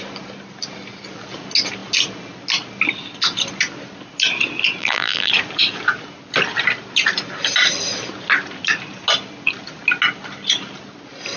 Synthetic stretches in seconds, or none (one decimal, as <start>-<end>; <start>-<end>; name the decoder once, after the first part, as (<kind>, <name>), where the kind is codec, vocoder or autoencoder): 4.8-5.3 (vocoder, BigVGAN v2)